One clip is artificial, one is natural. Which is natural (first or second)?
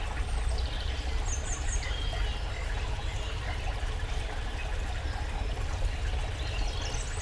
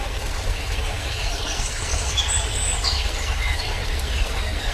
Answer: first